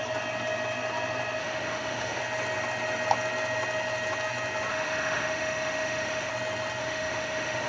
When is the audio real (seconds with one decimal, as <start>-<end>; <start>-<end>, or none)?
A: 0.0-1.4; 2.2-4.7; 6.3-6.8